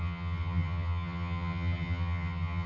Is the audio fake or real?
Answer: fake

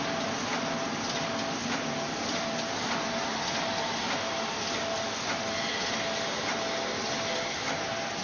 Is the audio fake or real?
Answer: real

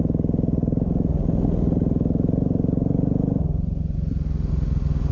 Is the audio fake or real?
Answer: real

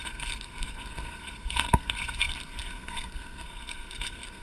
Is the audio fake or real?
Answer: fake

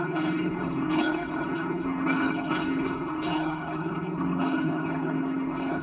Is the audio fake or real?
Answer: fake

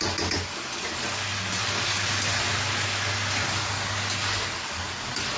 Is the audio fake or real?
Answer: real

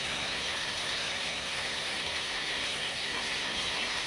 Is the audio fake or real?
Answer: fake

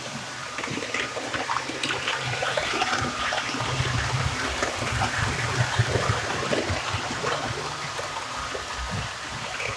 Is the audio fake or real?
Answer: fake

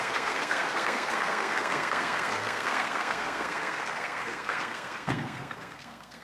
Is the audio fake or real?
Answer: fake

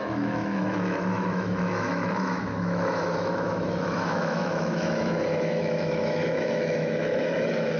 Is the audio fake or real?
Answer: fake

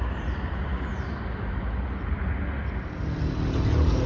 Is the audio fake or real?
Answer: real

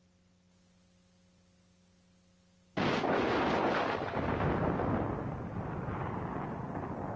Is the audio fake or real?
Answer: real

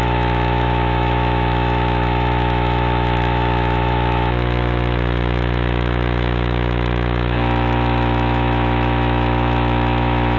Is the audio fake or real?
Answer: fake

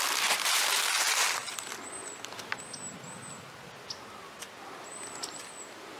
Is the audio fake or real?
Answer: real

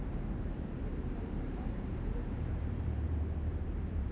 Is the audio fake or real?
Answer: fake